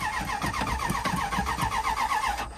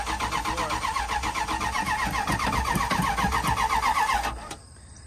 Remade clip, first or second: first